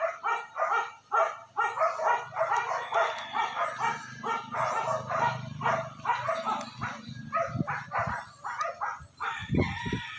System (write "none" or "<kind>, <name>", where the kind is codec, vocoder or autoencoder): none